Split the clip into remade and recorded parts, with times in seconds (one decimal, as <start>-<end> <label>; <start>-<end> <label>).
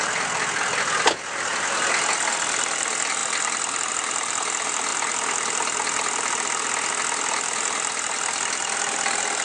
0.0-9.4 recorded